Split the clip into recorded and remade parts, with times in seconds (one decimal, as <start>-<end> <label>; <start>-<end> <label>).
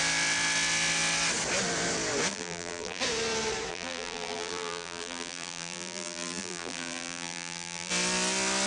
0.0-2.3 recorded; 2.3-3.0 remade; 3.0-3.7 recorded; 3.7-7.9 remade; 7.9-8.7 recorded